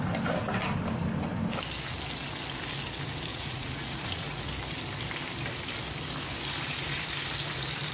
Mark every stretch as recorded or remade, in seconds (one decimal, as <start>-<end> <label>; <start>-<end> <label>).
0.0-3.3 recorded; 3.3-4.5 remade; 4.5-7.9 recorded